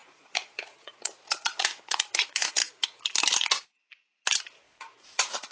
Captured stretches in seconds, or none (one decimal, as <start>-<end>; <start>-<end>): 2.6-4.4